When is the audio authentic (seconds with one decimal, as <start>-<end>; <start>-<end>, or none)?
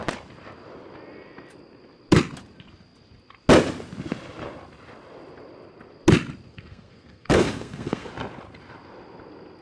0.0-6.5; 8.1-9.6